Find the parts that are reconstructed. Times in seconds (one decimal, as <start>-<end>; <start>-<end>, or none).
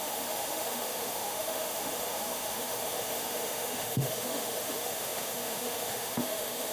0.0-6.7